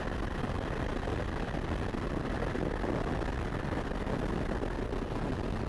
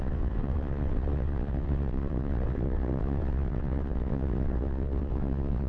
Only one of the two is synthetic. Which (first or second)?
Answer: second